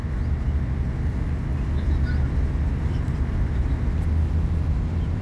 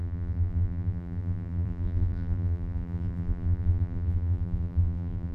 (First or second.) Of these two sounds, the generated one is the second